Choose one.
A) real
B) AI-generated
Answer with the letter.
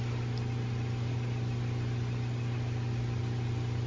A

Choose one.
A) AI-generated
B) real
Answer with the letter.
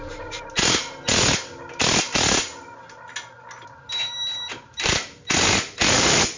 B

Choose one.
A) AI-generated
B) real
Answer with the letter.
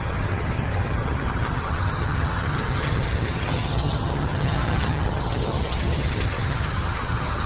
A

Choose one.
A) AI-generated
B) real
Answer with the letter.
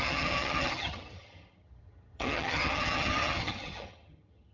A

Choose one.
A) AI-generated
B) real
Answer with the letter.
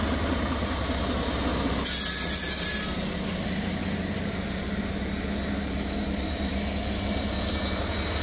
B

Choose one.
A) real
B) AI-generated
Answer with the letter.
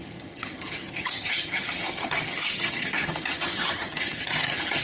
B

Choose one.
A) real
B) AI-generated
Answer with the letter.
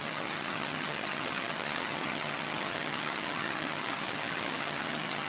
B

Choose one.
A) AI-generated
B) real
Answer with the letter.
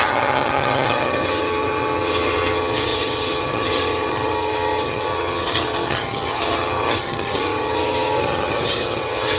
A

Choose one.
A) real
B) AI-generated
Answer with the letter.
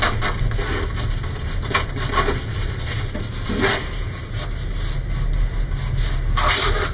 A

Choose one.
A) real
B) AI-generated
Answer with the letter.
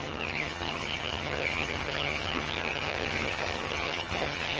B